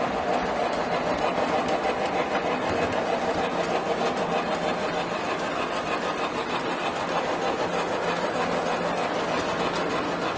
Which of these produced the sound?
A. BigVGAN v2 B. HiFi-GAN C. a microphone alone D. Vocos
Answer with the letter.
C